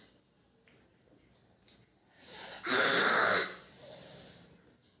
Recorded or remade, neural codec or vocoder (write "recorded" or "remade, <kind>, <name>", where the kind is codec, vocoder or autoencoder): recorded